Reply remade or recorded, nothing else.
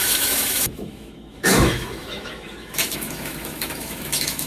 remade